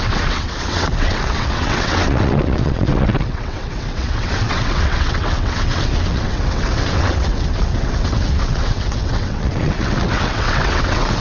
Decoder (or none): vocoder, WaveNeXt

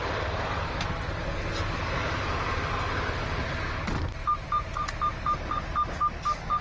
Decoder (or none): none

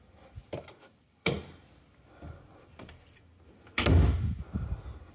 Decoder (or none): none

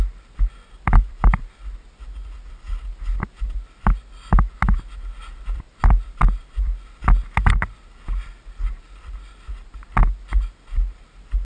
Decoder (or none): none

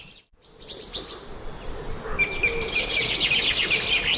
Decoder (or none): none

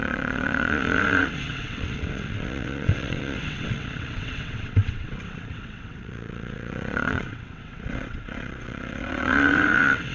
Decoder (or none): vocoder, WaveNeXt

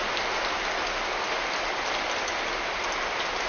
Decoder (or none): none